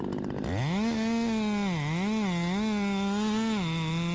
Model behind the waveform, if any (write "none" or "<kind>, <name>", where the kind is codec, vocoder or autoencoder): none